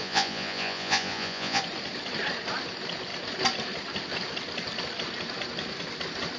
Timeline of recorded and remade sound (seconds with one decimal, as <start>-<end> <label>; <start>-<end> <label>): 0.0-1.6 remade; 1.6-6.4 recorded